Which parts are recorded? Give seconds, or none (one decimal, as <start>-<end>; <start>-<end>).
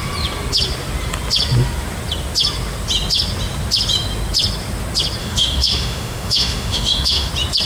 0.0-5.2; 7.3-7.7